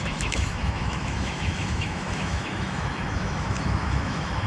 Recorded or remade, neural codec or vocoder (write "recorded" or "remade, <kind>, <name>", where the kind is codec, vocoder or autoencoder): remade, autoencoder, DAC-VAE